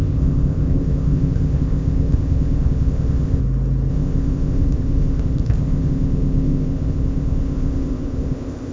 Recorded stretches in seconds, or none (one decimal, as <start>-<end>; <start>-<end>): 3.4-3.9